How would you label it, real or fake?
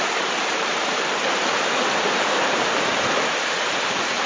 fake